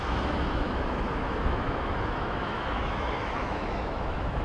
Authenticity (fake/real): fake